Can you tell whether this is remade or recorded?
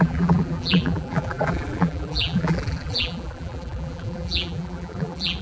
remade